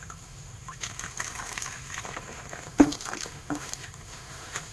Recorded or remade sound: remade